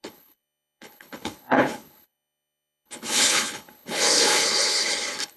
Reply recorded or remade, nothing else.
remade